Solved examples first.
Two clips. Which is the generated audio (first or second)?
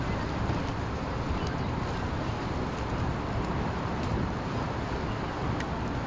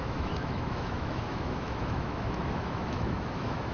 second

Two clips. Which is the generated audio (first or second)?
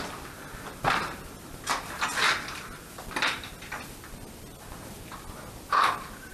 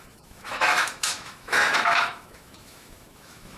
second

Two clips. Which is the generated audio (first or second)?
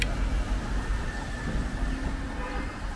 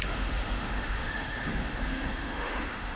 second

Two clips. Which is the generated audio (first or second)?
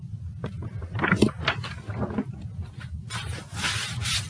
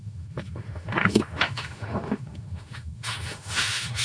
second